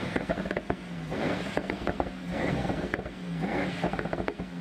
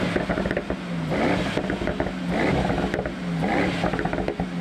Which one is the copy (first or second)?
first